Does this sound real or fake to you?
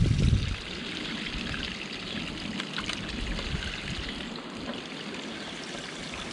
real